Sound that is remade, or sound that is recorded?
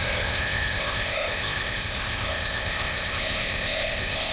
remade